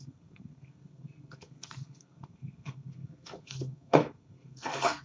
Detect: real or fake fake